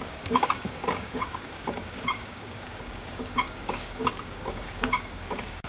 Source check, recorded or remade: remade